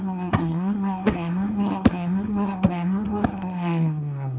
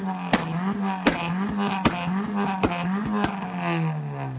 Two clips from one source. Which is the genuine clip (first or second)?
second